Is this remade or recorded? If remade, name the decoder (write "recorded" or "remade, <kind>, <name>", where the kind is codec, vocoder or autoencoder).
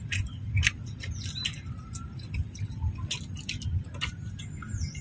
recorded